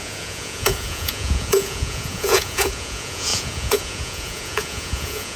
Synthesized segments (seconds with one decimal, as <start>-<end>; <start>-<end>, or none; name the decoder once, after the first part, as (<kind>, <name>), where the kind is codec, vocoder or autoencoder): 0.0-5.4 (vocoder, Vocos)